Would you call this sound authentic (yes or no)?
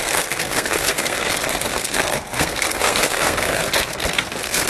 no